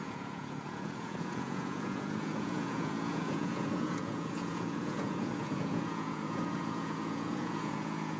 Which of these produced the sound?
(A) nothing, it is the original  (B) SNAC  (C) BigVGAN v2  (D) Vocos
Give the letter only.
D